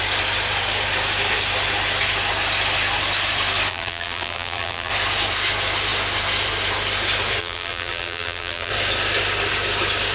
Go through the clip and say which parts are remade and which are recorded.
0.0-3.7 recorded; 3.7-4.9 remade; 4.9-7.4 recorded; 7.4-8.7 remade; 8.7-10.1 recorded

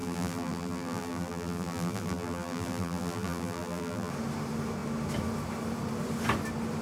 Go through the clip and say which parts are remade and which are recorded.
0.0-4.1 remade; 4.1-6.8 recorded

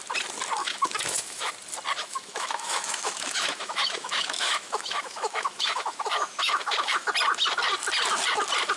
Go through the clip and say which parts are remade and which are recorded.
0.0-0.6 recorded; 0.6-1.5 remade; 1.5-2.0 recorded; 2.0-7.1 remade; 7.1-8.8 recorded